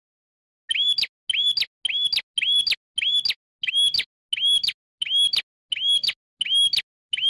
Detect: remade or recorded recorded